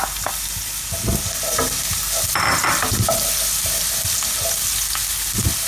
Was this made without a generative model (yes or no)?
yes